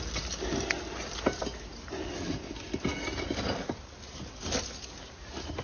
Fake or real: real